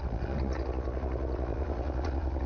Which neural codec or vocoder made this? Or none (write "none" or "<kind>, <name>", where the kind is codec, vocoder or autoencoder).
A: vocoder, Vocos